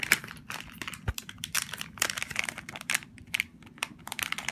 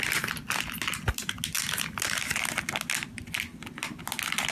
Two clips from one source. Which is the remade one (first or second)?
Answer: first